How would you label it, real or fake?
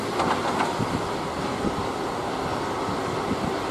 real